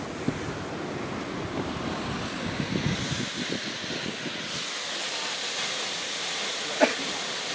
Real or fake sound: real